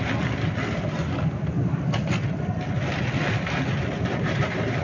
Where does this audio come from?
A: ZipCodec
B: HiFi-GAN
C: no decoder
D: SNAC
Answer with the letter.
C